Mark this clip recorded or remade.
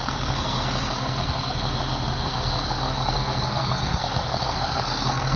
remade